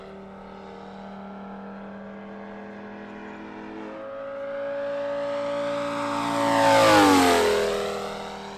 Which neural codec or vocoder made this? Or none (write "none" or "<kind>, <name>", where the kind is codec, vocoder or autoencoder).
none